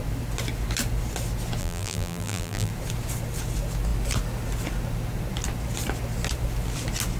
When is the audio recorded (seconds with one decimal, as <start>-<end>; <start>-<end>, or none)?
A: 0.0-1.6; 2.7-7.2

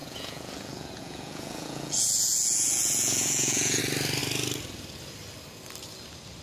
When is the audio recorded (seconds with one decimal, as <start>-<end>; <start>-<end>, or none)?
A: 3.8-6.4

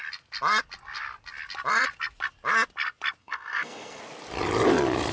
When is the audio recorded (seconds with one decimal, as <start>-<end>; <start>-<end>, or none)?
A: 0.0-3.2; 4.0-5.1